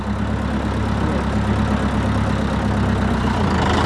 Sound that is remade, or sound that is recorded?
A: recorded